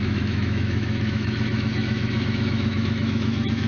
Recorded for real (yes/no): no